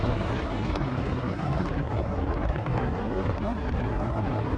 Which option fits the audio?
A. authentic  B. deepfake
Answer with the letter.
B